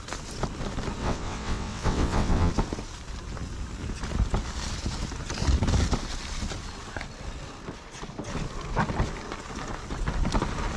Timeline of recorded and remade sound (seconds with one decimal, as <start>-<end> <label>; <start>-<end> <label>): 0.0-1.0 recorded; 1.0-2.5 remade; 2.5-10.8 recorded